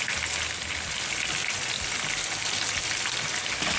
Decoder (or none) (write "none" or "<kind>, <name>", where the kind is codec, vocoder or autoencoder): none